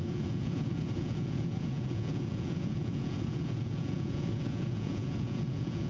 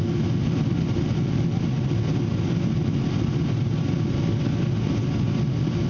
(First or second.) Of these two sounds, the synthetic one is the first